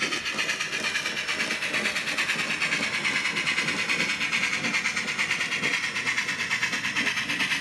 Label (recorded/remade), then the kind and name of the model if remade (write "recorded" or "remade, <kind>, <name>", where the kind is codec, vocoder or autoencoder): recorded